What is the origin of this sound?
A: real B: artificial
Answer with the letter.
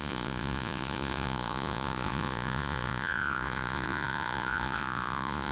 B